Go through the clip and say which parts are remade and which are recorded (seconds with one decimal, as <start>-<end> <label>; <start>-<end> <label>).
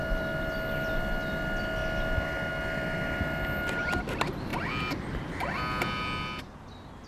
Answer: 0.0-7.1 recorded